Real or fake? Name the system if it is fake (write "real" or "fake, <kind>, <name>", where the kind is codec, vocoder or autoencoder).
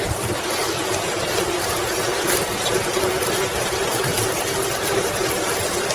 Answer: real